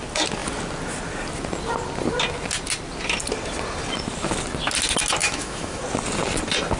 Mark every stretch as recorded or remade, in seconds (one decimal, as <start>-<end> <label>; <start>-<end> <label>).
0.0-5.2 recorded; 5.2-5.8 remade; 5.8-6.8 recorded